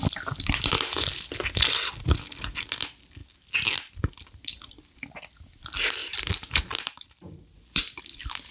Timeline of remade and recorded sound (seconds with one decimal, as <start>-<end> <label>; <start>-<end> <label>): 0.0-6.0 recorded; 6.0-8.0 remade; 8.0-8.5 recorded